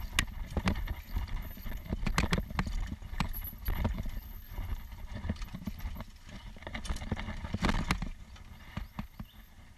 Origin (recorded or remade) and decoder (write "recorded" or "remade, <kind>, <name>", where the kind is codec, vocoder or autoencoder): recorded